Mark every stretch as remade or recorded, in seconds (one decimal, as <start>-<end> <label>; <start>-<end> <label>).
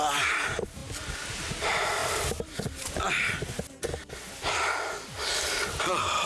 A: 0.0-6.3 recorded